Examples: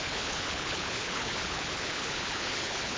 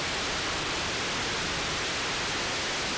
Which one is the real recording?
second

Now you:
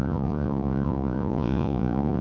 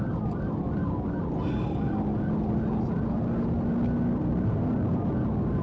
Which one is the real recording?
second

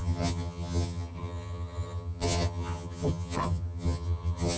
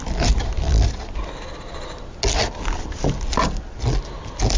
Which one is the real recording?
second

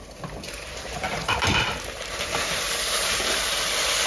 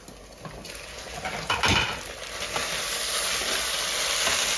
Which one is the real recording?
second